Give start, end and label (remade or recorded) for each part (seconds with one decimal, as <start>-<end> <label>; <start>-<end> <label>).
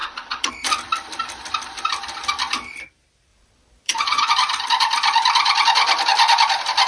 0.0-0.5 remade; 0.5-3.3 recorded; 3.3-4.3 remade; 4.3-6.9 recorded